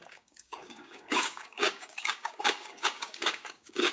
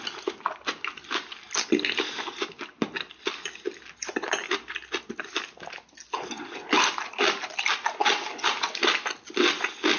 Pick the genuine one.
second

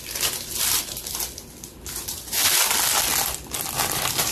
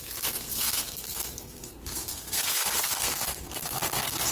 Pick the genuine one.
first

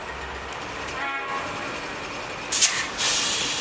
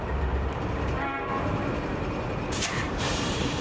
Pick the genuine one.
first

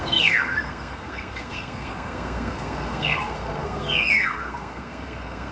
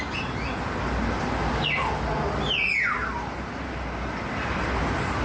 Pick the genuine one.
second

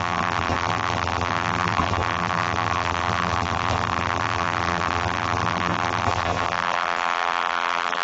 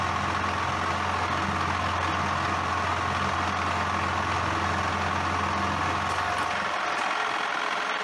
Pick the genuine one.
second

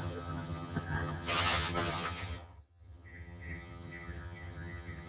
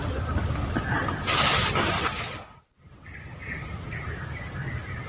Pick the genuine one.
second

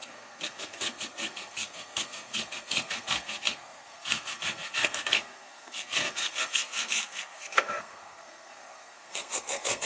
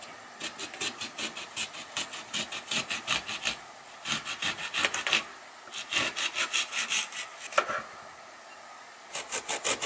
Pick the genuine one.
second